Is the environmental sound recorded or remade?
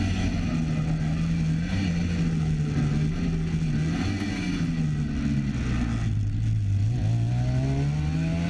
recorded